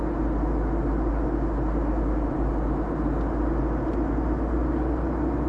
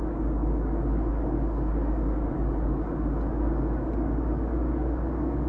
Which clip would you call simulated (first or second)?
second